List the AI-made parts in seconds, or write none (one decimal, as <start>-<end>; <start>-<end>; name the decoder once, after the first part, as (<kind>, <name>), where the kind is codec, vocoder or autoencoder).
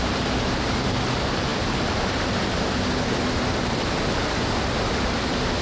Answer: none